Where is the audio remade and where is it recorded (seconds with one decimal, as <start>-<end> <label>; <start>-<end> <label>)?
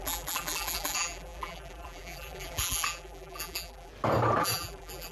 0.0-3.9 remade; 3.9-4.4 recorded; 4.4-5.1 remade